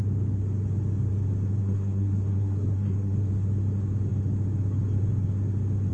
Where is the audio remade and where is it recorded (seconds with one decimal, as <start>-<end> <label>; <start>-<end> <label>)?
0.0-1.6 recorded; 1.6-3.3 remade; 3.3-5.9 recorded